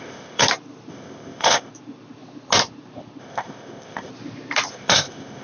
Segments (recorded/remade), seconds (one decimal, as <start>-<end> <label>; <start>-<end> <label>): 0.0-0.4 remade; 0.4-0.9 recorded; 0.9-1.7 remade; 1.7-3.2 recorded; 3.2-4.1 remade; 4.1-4.7 recorded; 4.7-5.4 remade